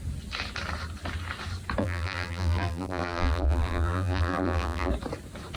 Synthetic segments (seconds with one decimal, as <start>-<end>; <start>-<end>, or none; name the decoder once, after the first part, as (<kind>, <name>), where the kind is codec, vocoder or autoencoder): 1.8-4.9 (vocoder, BigVGAN v2)